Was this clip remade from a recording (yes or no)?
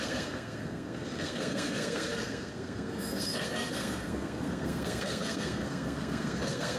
yes